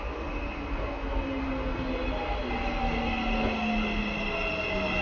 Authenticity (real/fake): real